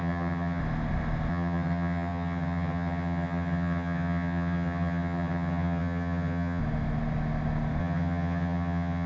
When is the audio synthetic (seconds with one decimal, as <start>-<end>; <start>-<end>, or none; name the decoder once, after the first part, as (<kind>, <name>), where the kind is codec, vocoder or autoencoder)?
0.0-0.6 (vocoder, HiFi-GAN); 1.3-6.6; 7.8-9.1